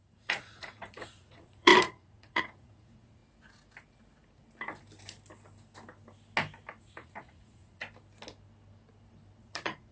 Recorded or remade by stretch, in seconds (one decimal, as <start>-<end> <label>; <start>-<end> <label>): 0.0-3.2 remade; 3.2-6.8 recorded; 6.8-7.8 remade; 7.8-9.4 recorded; 9.4-9.9 remade

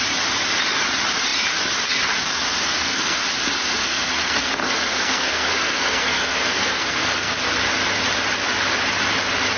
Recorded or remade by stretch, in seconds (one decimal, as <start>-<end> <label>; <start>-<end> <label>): 0.0-2.7 recorded; 2.7-3.2 remade; 3.2-3.8 recorded; 3.8-7.3 remade; 7.3-9.6 recorded

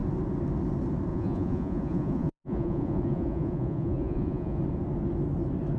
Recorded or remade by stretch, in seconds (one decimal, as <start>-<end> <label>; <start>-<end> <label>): 0.0-1.1 recorded; 1.1-4.6 remade; 4.6-5.8 recorded

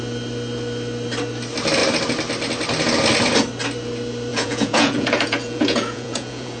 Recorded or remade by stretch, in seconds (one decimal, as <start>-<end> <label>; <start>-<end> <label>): 0.0-4.3 recorded; 4.3-6.6 remade